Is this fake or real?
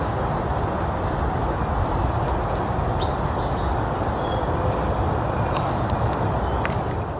real